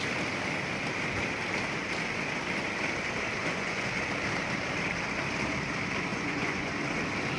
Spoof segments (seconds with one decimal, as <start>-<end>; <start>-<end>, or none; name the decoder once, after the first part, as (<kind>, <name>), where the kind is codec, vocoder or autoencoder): 3.4-3.9 (vocoder, Vocos); 6.1-6.7